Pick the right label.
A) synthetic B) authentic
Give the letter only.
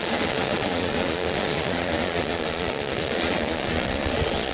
A